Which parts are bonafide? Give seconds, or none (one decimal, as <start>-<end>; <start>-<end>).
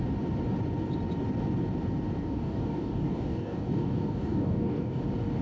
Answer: 0.0-2.2; 5.0-5.4